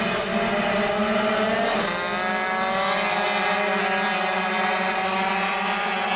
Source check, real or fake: real